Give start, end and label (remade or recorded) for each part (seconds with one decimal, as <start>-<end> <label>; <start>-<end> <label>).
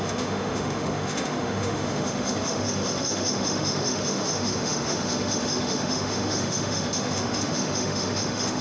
0.0-8.6 remade